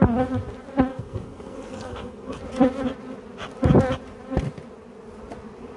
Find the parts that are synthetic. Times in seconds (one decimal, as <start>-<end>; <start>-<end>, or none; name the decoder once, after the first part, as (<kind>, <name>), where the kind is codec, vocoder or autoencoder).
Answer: 0.9-2.4 (codec, SNAC)